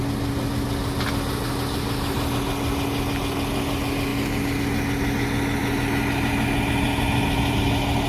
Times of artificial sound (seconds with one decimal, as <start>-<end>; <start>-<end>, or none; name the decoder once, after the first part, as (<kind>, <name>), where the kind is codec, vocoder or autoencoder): none